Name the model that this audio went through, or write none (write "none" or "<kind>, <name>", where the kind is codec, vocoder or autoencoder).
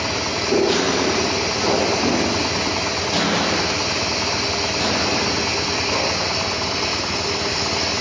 none